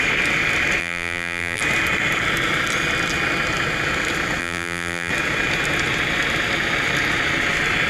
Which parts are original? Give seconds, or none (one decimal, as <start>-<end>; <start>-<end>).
0.0-0.8; 1.6-4.4; 5.1-7.9

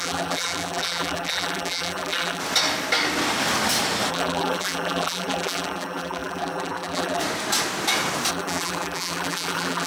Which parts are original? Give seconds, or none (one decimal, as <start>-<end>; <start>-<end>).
2.4-4.1; 7.2-8.3

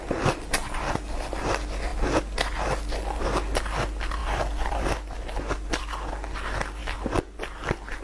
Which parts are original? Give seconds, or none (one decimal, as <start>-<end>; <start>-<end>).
0.0-4.2; 5.3-8.0

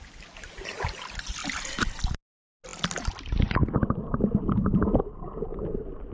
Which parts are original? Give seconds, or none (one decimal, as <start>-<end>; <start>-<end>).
0.0-3.6; 5.0-6.1

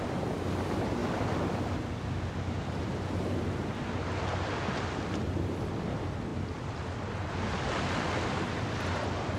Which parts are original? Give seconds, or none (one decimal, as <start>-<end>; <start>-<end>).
0.0-1.0; 3.4-9.4

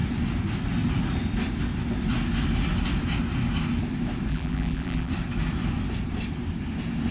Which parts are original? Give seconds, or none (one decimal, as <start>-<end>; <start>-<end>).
0.0-4.3; 5.1-7.1

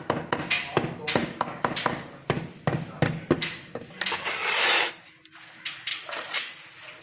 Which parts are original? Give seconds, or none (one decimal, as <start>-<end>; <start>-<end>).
0.0-1.2; 2.5-4.4; 5.4-5.9